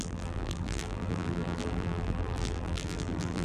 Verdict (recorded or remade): remade